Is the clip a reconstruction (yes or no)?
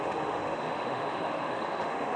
yes